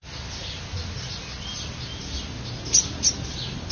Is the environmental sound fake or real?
real